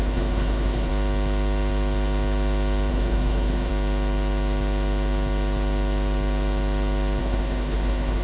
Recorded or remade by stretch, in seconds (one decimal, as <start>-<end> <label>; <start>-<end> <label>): 0.0-0.9 remade; 0.9-2.9 recorded; 2.9-3.7 remade; 3.7-7.2 recorded; 7.2-8.2 remade